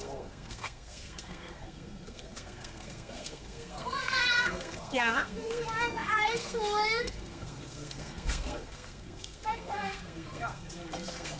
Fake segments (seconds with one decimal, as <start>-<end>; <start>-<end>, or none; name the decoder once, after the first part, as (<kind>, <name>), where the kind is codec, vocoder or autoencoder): 0.0-11.4 (codec, SNAC)